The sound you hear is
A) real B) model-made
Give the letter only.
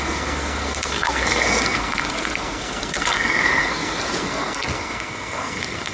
B